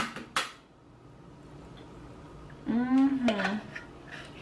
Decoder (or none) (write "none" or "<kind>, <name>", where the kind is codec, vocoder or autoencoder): none